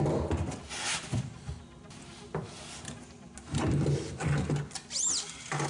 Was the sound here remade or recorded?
recorded